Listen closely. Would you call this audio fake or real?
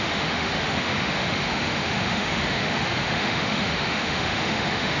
fake